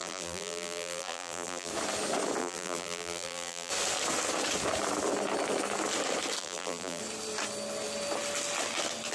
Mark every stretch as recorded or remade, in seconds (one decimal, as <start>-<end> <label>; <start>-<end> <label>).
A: 0.0-1.7 remade; 1.7-2.4 recorded; 2.4-3.7 remade; 3.7-6.4 recorded; 6.4-7.0 remade; 7.0-9.1 recorded